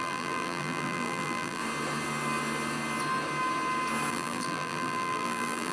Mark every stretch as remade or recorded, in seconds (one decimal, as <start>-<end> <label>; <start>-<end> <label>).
0.0-1.6 remade; 1.6-4.1 recorded; 4.1-5.7 remade